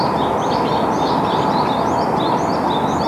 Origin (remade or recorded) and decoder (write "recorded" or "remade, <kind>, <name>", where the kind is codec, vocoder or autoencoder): recorded